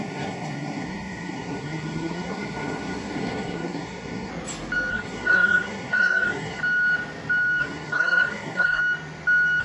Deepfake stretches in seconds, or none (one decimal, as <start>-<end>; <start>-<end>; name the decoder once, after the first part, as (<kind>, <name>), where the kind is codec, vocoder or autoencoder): 0.0-4.3 (codec, SNAC); 4.9-6.6; 7.6-8.8